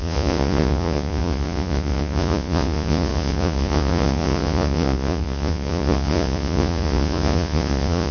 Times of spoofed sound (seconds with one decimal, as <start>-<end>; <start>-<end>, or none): 0.0-8.1